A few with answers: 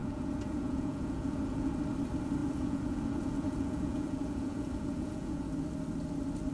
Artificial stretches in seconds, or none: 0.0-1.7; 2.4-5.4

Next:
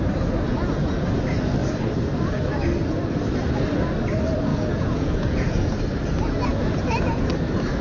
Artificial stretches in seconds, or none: 0.5-1.0; 4.5-5.8; 6.5-7.3

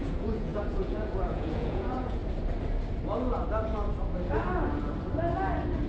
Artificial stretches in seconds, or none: 0.0-2.2